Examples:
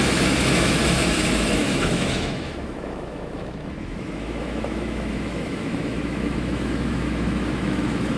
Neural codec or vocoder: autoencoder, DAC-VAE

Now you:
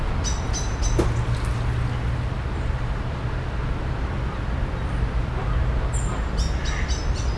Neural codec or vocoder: none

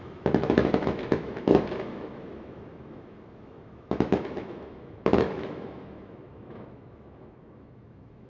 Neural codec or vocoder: autoencoder, DAC-VAE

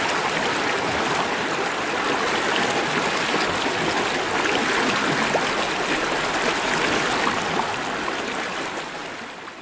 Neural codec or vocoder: none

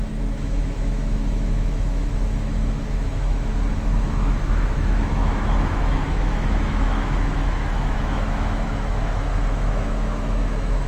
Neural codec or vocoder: autoencoder, DAC-VAE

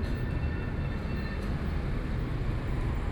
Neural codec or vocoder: none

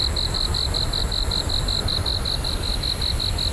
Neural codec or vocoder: none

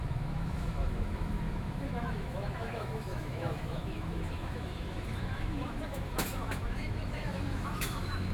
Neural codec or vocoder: autoencoder, DAC-VAE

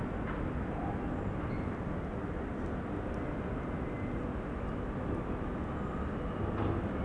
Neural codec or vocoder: none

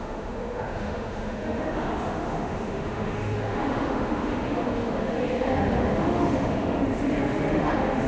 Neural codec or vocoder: autoencoder, DAC-VAE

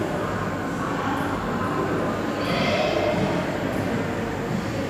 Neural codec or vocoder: none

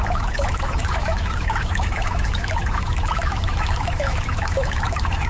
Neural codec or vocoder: autoencoder, DAC-VAE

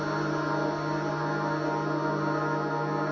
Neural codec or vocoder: none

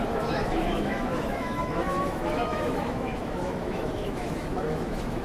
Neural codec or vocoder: autoencoder, DAC-VAE